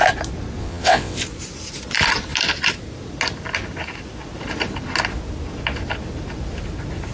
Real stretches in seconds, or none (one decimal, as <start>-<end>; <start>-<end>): 0.0-0.6; 1.2-7.1